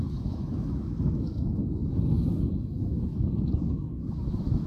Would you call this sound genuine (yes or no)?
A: no